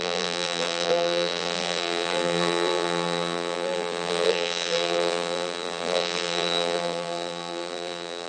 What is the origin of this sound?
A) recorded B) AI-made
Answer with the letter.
B